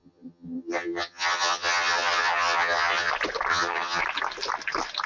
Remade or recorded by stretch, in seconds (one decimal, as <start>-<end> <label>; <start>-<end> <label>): 0.0-3.1 remade; 3.1-3.5 recorded; 3.5-4.0 remade; 4.0-5.1 recorded